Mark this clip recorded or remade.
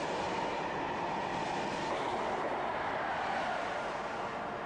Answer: recorded